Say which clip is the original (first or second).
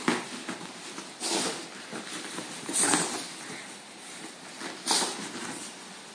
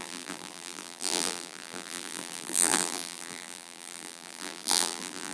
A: first